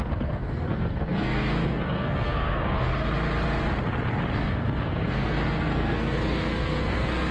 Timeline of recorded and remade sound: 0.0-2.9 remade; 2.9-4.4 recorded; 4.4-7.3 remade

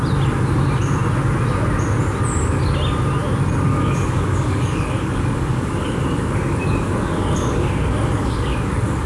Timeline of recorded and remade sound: 0.0-3.7 recorded; 3.7-9.1 remade

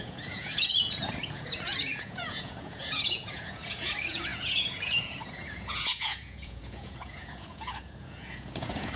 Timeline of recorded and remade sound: 0.0-9.0 remade

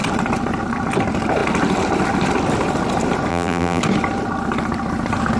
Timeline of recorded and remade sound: 0.0-3.3 recorded; 3.3-3.8 remade; 3.8-5.4 recorded

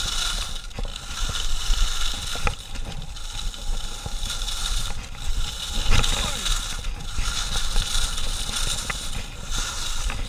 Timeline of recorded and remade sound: 0.0-10.3 recorded

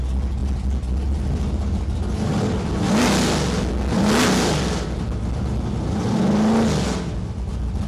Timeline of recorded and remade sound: 0.0-7.9 recorded

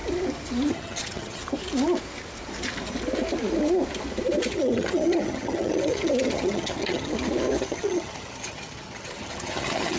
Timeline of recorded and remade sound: 0.0-0.7 recorded; 0.7-1.4 remade; 1.4-4.5 recorded; 4.5-7.1 remade; 7.1-7.6 recorded; 7.6-10.0 remade

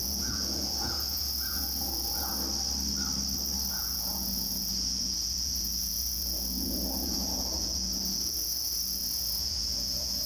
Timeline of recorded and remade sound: 0.0-2.3 remade; 2.3-3.7 recorded; 3.7-10.3 remade